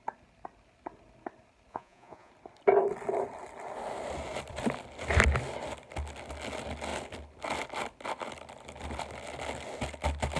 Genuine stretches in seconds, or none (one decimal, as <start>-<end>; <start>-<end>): 0.0-1.7; 2.3-10.4